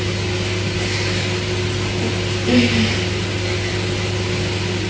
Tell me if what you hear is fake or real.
real